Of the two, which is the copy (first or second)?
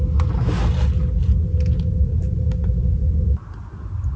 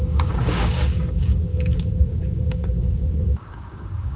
second